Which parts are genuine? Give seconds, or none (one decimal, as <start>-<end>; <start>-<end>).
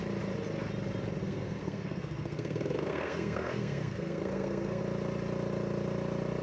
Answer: 0.0-1.2; 4.8-6.4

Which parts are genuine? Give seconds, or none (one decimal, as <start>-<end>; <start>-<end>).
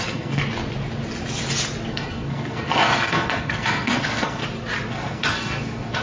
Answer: 0.4-1.9; 4.4-4.9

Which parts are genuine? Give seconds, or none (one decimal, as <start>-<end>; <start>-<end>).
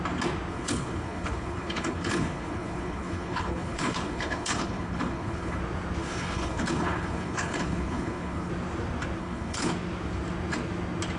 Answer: 0.0-0.5; 5.6-6.0; 8.5-9.2; 9.7-11.2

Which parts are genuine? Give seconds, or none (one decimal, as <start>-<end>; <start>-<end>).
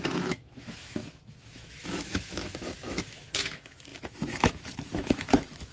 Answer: none